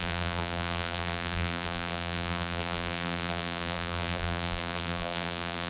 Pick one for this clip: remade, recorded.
remade